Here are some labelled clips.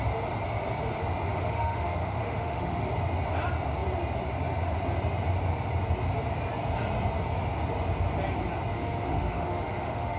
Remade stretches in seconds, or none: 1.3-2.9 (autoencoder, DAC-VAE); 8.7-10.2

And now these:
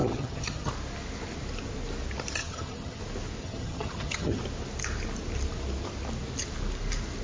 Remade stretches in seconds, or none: 0.0-0.7 (vocoder, HiFi-GAN); 2.4-3.0; 3.4-4.4

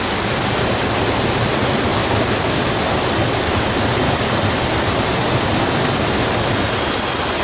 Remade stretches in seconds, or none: none